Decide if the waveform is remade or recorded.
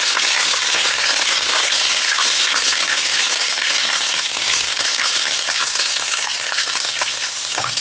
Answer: remade